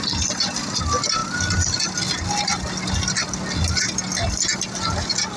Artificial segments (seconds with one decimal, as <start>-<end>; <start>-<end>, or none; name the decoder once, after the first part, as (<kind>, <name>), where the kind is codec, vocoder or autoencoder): none